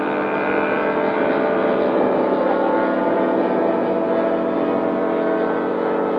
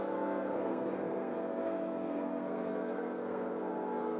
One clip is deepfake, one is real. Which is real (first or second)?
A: first